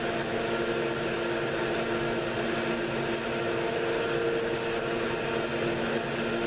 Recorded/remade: recorded